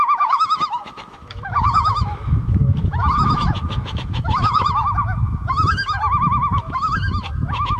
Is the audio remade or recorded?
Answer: remade